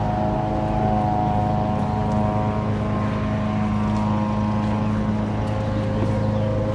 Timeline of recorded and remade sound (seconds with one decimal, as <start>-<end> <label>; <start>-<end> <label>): 0.0-6.7 recorded